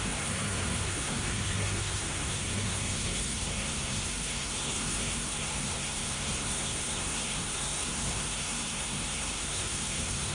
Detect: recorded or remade remade